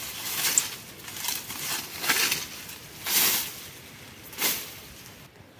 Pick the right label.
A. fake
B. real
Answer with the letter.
B